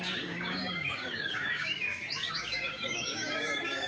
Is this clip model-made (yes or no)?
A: yes